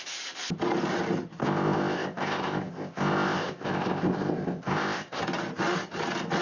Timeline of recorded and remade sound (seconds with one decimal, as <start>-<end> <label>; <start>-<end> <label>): 0.0-1.4 recorded; 1.4-5.2 remade; 5.2-6.4 recorded